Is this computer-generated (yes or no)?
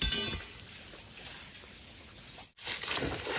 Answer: no